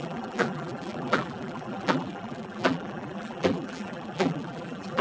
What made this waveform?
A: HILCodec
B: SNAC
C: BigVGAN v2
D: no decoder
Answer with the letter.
C